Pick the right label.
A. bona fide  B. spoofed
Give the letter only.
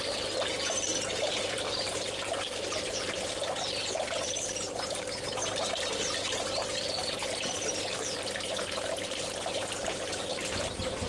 B